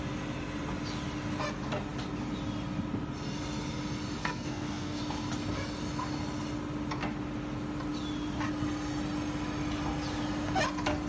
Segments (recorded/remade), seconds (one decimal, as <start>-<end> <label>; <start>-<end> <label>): 0.0-4.2 recorded; 4.2-5.0 remade; 5.0-11.1 recorded